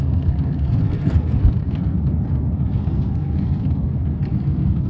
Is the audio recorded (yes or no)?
no